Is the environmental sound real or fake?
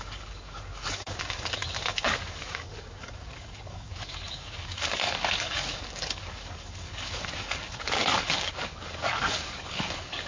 fake